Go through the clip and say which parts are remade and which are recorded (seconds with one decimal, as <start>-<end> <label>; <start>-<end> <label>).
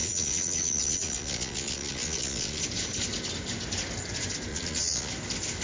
0.0-2.6 remade; 2.6-4.5 recorded; 4.5-5.1 remade; 5.1-5.6 recorded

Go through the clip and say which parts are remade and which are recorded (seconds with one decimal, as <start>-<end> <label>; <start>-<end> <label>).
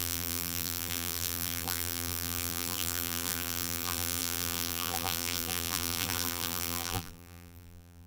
0.0-8.1 remade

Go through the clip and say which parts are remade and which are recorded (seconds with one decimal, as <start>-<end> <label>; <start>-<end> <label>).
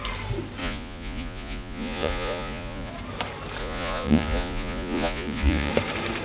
0.0-0.6 recorded; 0.6-2.9 remade; 2.9-3.6 recorded; 3.6-5.7 remade; 5.7-6.2 recorded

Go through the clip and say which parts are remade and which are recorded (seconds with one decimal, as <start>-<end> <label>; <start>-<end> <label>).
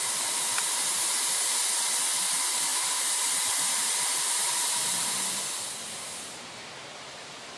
0.0-2.7 recorded; 2.7-5.5 remade; 5.5-7.6 recorded